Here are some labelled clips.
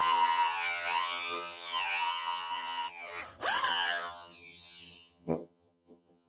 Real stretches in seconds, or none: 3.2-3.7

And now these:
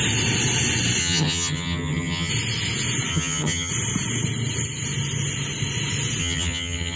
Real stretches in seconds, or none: 0.0-1.0; 2.3-3.1; 3.7-6.2